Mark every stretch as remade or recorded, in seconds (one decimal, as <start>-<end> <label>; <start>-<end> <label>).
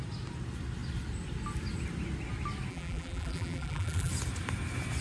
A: 0.0-2.7 recorded; 2.7-4.1 remade; 4.1-5.0 recorded